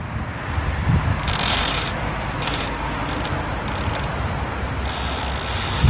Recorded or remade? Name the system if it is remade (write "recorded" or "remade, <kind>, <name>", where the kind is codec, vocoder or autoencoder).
recorded